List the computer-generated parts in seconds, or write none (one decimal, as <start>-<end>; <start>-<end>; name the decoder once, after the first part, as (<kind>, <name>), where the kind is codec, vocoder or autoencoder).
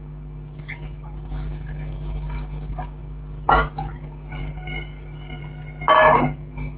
0.0-5.4 (codec, DAC); 6.0-6.8